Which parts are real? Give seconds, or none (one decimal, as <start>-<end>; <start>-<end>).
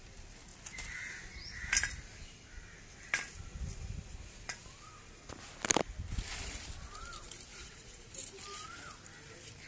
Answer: 0.0-7.5; 8.1-9.7